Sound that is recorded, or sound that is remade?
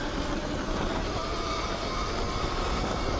recorded